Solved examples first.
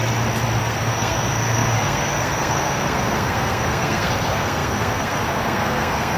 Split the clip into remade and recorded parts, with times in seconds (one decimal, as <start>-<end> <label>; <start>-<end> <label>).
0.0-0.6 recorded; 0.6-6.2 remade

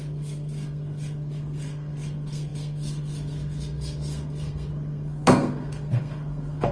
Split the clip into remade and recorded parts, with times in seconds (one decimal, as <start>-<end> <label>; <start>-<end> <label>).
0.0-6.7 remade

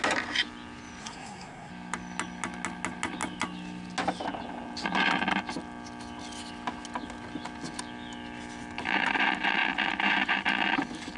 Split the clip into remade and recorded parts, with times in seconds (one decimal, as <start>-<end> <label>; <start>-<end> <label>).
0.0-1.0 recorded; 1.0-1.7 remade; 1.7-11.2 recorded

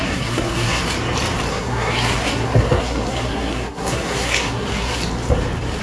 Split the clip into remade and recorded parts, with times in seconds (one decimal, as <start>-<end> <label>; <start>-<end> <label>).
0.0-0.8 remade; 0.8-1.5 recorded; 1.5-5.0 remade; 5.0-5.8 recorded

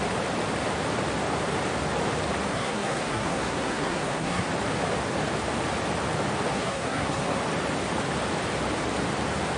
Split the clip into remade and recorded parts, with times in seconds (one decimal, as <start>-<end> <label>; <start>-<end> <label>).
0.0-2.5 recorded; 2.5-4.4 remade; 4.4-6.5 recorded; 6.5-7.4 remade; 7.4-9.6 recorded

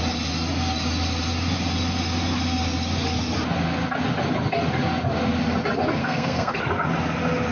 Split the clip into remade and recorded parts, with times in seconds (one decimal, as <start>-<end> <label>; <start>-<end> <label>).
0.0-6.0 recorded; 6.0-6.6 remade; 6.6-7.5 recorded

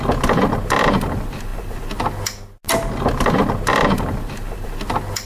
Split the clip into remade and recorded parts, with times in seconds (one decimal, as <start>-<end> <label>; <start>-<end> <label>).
0.0-5.3 recorded

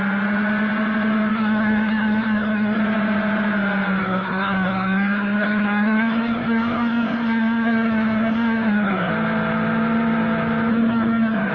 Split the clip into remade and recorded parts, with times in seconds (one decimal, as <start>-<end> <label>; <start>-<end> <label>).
0.0-1.3 recorded; 1.3-2.8 remade; 2.8-4.0 recorded; 4.0-9.1 remade; 9.1-10.7 recorded; 10.7-11.5 remade